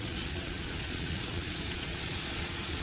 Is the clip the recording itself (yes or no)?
no